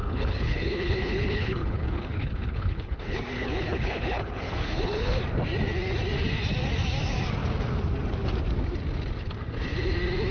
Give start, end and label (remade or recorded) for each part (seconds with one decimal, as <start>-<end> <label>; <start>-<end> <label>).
0.0-5.2 remade; 5.2-10.3 recorded